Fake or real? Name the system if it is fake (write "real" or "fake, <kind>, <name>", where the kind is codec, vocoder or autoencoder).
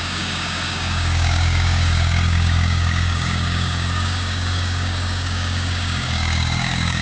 fake, codec, DAC